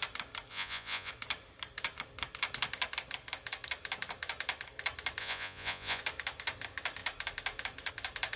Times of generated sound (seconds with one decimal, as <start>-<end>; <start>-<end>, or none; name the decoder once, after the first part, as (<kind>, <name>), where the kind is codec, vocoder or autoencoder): 0.5-1.1 (vocoder, Vocos); 5.2-6.0